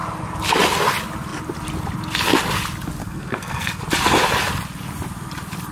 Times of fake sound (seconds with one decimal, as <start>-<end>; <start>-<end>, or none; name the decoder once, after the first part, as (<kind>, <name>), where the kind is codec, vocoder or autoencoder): 3.0-3.8 (codec, SNAC)